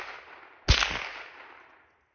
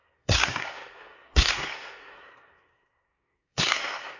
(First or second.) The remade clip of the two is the second